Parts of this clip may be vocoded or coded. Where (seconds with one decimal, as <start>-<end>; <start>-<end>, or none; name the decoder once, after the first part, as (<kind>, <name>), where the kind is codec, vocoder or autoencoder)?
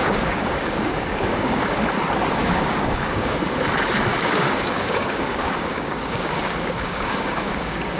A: 0.0-1.8 (codec, DAC); 2.4-3.4; 4.1-8.0